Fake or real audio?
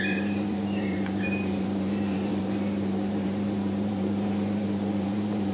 fake